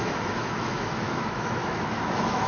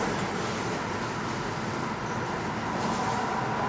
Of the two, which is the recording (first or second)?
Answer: second